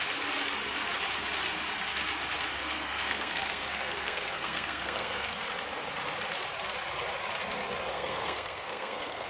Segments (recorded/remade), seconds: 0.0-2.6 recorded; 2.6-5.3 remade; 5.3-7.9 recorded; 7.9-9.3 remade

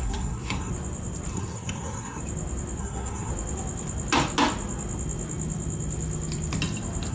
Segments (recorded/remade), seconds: 0.0-0.7 remade; 0.7-1.3 recorded; 1.3-2.2 remade; 2.2-2.8 recorded; 2.8-3.3 remade; 3.3-7.1 recorded

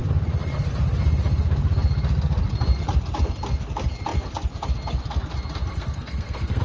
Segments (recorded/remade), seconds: 0.0-5.7 recorded; 5.7-6.6 remade

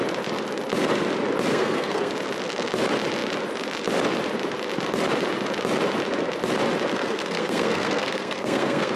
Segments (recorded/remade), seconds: 0.0-1.5 recorded; 1.5-2.1 remade; 2.1-6.9 recorded; 6.9-9.0 remade

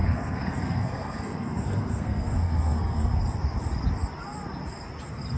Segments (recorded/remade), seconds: 0.0-3.2 remade; 3.2-5.4 recorded